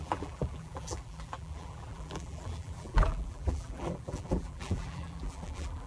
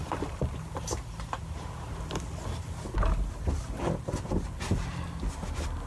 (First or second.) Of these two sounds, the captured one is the second